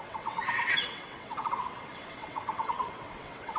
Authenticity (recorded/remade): remade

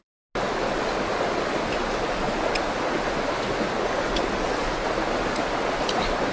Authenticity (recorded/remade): recorded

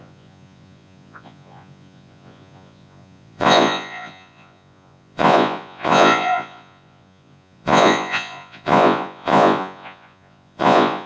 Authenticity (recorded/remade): remade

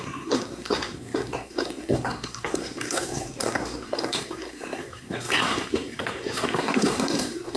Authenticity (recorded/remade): remade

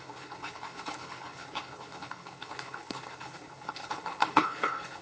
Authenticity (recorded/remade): remade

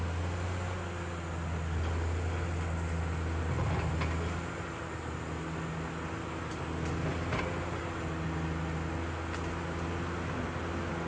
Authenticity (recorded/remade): recorded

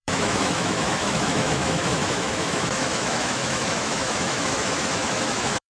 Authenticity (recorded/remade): remade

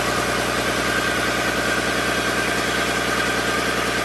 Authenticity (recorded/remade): recorded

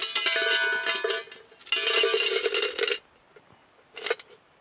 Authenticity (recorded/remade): recorded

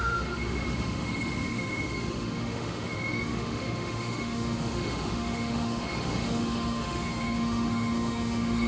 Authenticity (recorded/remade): remade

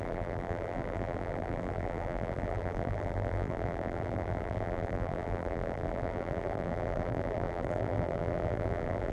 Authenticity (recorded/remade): remade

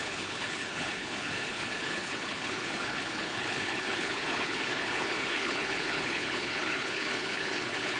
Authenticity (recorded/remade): remade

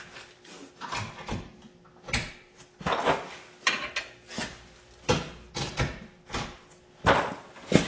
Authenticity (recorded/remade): recorded